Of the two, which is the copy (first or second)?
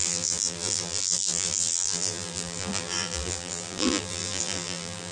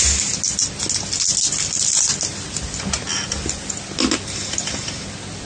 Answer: first